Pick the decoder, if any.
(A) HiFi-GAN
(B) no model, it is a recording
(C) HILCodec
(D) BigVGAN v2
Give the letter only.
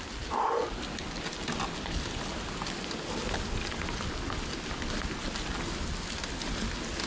B